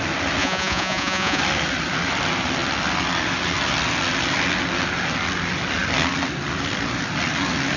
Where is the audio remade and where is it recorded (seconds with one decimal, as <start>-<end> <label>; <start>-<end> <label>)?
0.0-0.4 recorded; 0.4-1.4 remade; 1.4-7.8 recorded